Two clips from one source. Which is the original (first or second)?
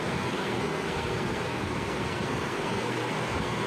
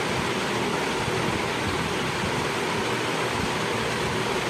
second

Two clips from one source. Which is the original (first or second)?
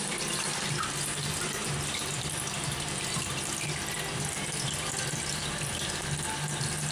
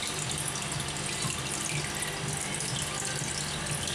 second